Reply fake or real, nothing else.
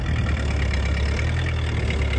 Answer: real